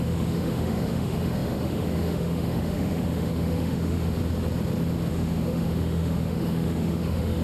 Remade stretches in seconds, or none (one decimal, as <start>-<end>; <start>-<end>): 0.0-4.2; 5.1-7.4